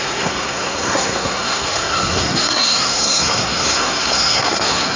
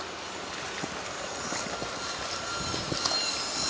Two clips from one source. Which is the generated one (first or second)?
first